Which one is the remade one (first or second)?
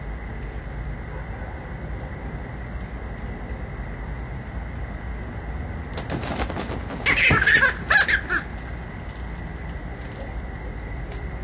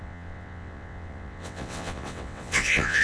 second